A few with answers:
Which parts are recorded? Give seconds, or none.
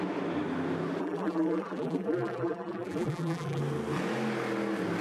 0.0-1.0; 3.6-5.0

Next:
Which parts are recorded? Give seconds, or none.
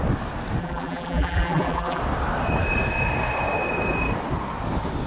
0.0-0.6; 2.0-5.1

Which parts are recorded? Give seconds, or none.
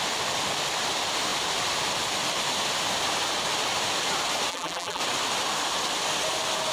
0.0-4.5; 5.0-6.7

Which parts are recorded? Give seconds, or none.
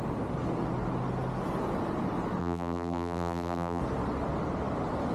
0.0-2.4; 3.8-5.1